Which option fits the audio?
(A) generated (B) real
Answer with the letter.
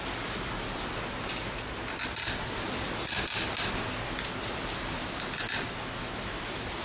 B